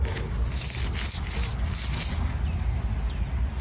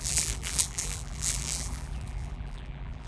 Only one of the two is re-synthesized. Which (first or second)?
second